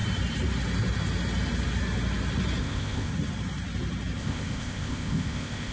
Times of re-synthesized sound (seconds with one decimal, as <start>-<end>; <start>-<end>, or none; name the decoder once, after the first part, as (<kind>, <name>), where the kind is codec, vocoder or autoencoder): 2.6-3.1 (codec, ZipCodec); 4.2-5.7

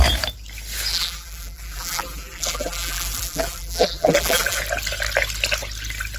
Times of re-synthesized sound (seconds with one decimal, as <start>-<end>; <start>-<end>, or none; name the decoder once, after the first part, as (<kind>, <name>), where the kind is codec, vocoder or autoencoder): 0.9-4.6 (vocoder, BigVGAN v2)

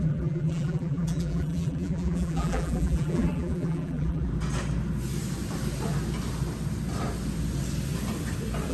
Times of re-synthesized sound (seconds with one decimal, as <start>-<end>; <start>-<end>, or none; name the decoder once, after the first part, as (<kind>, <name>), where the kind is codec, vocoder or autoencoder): 0.0-4.3 (vocoder, BigVGAN v2)

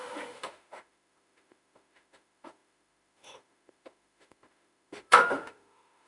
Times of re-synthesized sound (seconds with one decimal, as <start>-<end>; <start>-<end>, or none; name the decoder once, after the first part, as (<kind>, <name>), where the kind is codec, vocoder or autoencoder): 0.0-6.1 (autoencoder, DAC-VAE)

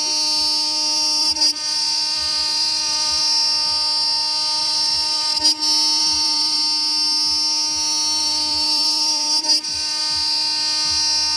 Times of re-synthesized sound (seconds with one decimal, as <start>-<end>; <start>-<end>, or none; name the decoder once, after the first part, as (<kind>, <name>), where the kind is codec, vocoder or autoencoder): 1.2-3.2 (vocoder, BigVGAN v2); 4.6-5.4; 6.0-6.6; 8.2-10.0

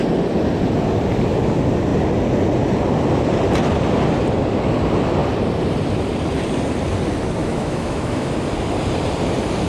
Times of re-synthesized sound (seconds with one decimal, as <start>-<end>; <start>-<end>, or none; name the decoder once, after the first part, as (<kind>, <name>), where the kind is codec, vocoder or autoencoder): 7.4-8.3 (autoencoder, DAC-VAE)